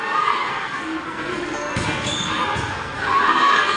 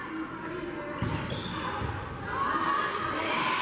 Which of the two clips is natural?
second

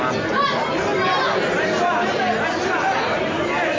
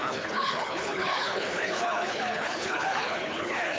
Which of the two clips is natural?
first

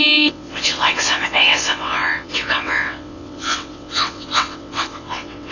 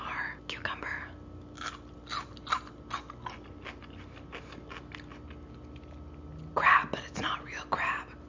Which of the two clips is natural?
second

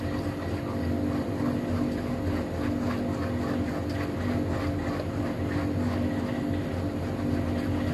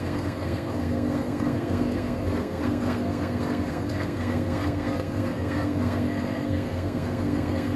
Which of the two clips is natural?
first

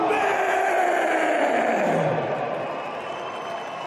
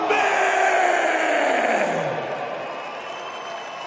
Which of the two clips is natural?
second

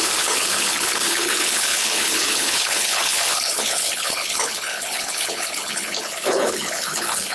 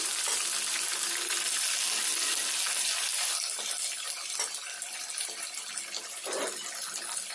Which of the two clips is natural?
second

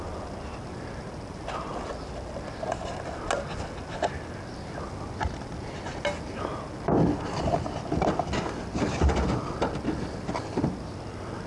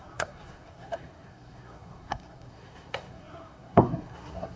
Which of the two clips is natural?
first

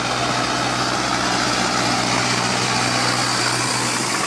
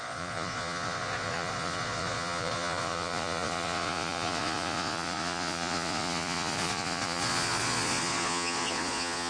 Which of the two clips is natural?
first